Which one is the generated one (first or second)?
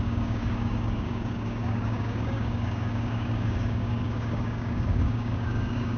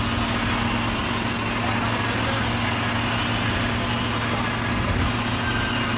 first